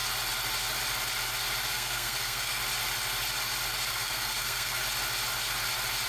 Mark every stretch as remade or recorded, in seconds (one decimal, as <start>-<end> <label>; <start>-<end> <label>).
0.0-1.7 recorded; 1.7-2.6 remade; 2.6-3.9 recorded; 3.9-4.8 remade; 4.8-6.1 recorded